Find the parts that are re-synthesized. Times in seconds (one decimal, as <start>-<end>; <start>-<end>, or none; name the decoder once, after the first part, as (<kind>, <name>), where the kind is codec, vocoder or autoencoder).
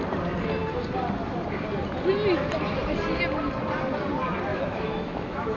4.5-5.6 (autoencoder, DAC-VAE)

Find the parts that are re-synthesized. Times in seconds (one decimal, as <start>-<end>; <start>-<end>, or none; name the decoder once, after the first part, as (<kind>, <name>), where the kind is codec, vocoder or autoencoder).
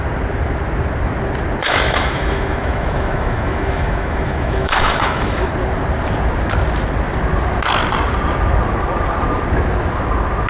1.6-5.5 (autoencoder, DAC-VAE)